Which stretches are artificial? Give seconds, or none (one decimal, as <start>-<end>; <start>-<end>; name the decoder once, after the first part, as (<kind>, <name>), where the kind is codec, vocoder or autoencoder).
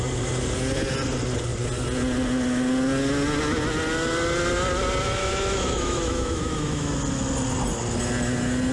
5.2-6.9 (autoencoder, DAC-VAE)